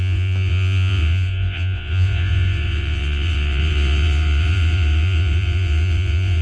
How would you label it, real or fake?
fake